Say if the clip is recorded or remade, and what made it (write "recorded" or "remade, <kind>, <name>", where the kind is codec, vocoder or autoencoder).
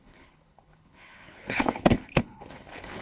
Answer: remade, codec, HILCodec